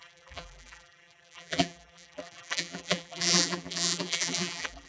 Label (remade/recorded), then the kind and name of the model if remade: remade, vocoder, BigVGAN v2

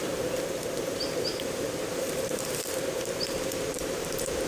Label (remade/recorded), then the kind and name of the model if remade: remade, vocoder, BigVGAN v2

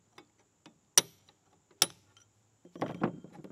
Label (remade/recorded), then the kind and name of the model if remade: recorded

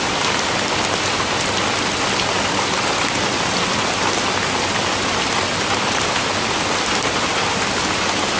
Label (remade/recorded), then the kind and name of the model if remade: remade, vocoder, BigVGAN v2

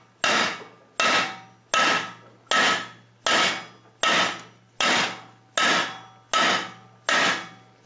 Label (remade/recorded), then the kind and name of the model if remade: recorded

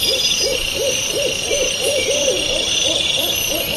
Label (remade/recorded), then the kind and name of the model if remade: remade, vocoder, BigVGAN v2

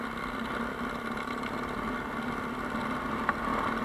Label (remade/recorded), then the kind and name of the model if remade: recorded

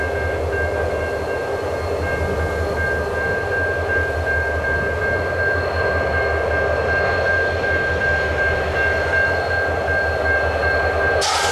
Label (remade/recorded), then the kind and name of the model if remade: recorded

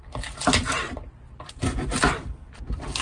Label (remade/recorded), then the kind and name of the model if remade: recorded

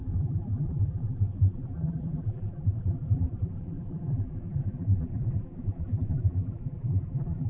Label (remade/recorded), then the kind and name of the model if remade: remade, vocoder, BigVGAN v2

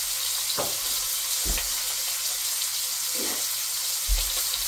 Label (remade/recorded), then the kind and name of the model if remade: recorded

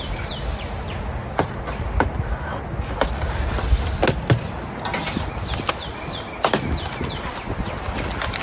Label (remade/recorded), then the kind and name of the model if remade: recorded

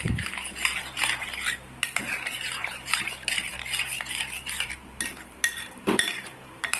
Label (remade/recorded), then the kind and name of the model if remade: remade, vocoder, BigVGAN v2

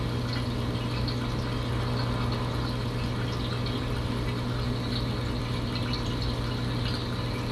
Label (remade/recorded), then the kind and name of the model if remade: recorded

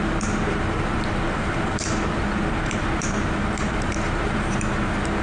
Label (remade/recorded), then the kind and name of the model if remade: remade, vocoder, BigVGAN v2